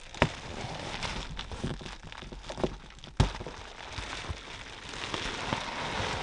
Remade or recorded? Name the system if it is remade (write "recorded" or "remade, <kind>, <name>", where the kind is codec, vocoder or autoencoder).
recorded